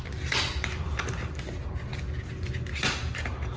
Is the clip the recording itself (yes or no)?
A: yes